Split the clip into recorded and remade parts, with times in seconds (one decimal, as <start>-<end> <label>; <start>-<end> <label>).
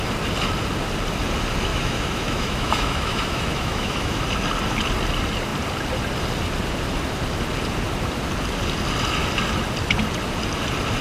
0.0-1.7 recorded; 1.7-4.2 remade; 4.2-11.0 recorded